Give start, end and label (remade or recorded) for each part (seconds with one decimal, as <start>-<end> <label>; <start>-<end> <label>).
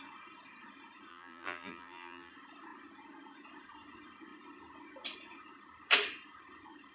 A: 0.0-1.1 recorded; 1.1-2.3 remade; 2.3-6.9 recorded